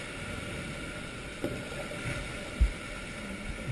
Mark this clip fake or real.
real